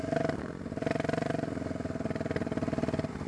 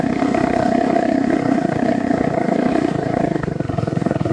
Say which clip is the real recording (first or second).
first